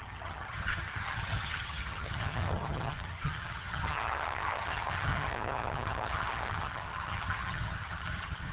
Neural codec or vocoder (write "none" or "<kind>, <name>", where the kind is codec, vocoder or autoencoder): vocoder, HiFi-GAN